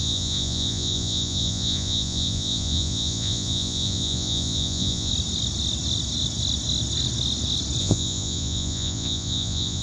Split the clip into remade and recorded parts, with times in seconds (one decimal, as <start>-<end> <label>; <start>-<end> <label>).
0.0-5.1 remade; 5.1-7.8 recorded; 7.8-9.8 remade

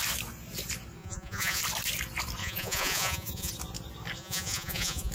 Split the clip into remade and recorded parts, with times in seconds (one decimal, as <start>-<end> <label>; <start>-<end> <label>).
0.0-1.0 recorded; 1.0-1.6 remade; 1.6-2.4 recorded; 2.4-3.5 remade; 3.5-4.2 recorded; 4.2-5.1 remade

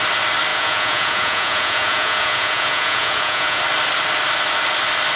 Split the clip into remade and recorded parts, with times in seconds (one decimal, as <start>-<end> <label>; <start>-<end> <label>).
0.0-0.5 recorded; 0.5-3.6 remade; 3.6-5.2 recorded

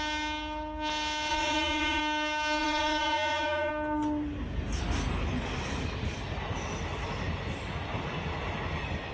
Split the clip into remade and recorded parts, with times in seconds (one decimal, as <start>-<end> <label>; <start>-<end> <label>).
0.0-1.3 recorded; 1.3-2.0 remade; 2.0-2.6 recorded; 2.6-3.7 remade; 3.7-9.1 recorded

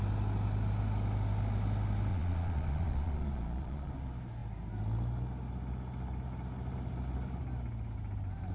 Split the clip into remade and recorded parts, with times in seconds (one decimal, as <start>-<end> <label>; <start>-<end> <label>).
0.0-2.1 recorded; 2.1-3.9 remade; 3.9-8.5 recorded

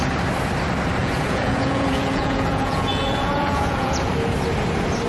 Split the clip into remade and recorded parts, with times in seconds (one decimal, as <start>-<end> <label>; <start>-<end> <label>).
0.0-1.0 recorded; 1.0-4.1 remade; 4.1-5.1 recorded